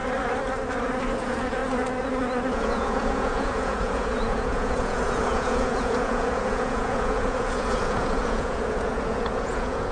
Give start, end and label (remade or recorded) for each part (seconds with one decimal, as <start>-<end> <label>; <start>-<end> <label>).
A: 0.0-1.1 recorded; 1.1-1.6 remade; 1.6-2.5 recorded; 2.5-9.9 remade